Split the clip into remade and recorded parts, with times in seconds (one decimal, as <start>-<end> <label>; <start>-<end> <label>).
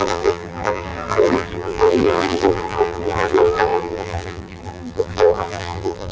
0.0-6.1 remade